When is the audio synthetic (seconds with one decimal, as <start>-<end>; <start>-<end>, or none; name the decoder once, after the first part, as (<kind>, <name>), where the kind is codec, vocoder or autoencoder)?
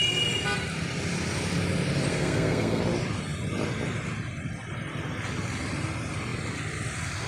2.1-2.8 (codec, SNAC)